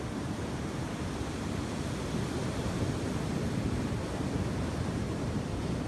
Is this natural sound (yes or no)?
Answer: yes